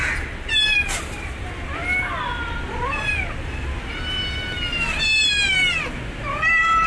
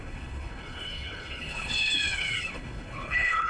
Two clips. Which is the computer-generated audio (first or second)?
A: second